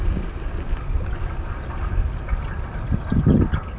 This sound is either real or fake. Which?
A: real